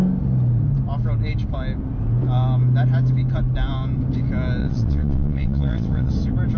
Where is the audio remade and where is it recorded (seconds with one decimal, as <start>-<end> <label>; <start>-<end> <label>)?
0.0-4.6 recorded; 4.6-6.1 remade; 6.1-6.6 recorded